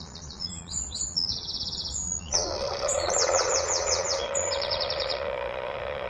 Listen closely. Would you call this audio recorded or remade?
remade